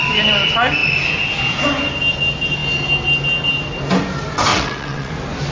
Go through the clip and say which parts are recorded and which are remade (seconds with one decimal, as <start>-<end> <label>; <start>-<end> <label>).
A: 0.0-4.5 recorded; 4.5-5.1 remade; 5.1-5.5 recorded